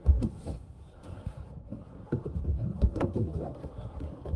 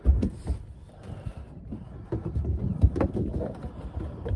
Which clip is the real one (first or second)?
second